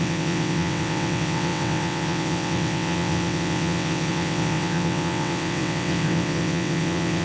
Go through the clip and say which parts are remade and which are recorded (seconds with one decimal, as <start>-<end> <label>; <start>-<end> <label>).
0.0-7.2 remade